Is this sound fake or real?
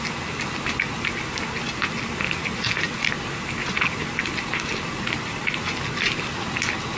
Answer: real